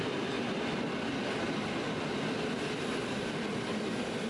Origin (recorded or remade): recorded